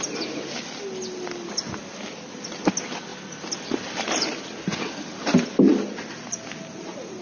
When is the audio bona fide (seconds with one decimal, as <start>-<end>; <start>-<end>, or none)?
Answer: 0.0-7.2